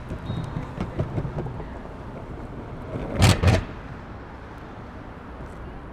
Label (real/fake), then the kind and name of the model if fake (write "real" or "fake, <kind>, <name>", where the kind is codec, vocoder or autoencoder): real